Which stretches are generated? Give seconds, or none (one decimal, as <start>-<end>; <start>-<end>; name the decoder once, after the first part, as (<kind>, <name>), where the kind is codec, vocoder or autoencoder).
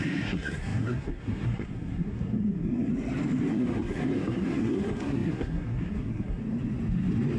0.0-2.9 (codec, SNAC); 3.5-6.4